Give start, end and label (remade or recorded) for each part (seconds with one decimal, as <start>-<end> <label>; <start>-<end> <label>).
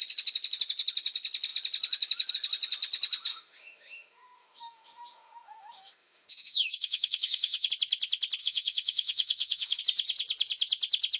0.0-3.3 recorded; 3.3-7.7 remade; 7.7-8.4 recorded; 8.4-9.8 remade; 9.8-11.2 recorded